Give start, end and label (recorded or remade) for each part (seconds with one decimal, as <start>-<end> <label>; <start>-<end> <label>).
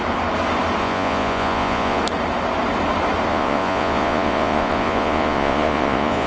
0.0-0.8 recorded; 0.8-2.0 remade; 2.0-3.3 recorded; 3.3-6.3 remade